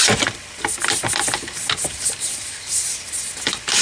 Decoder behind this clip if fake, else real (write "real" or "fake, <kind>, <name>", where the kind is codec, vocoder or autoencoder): real